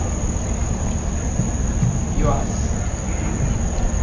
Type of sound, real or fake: real